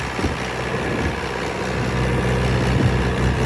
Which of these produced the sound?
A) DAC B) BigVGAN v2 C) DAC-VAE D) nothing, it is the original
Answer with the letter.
D